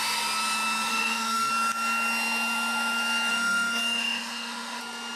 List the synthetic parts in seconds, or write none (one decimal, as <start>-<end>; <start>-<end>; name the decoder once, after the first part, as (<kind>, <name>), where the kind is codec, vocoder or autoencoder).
0.9-1.5 (autoencoder, DAC-VAE); 3.3-4.8